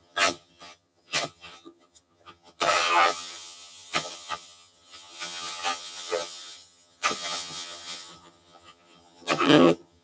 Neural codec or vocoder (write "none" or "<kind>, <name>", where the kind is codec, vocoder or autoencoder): vocoder, HiFi-GAN